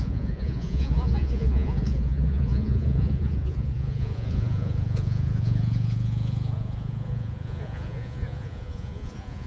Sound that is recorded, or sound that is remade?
remade